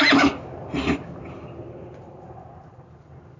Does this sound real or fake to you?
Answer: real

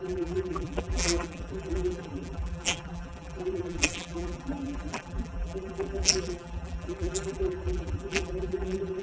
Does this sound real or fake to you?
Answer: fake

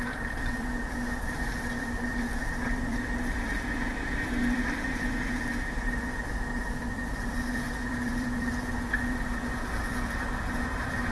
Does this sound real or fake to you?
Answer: fake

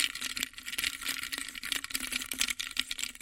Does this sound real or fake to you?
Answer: real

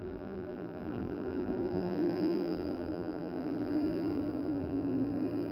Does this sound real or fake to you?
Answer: fake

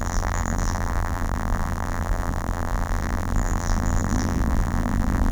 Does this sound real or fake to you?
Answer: fake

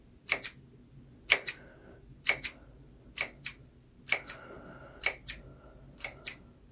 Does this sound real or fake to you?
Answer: real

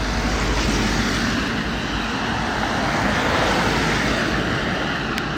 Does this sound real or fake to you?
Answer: real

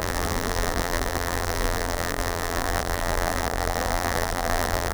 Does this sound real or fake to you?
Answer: fake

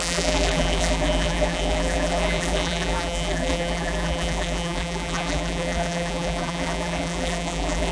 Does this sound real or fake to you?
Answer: fake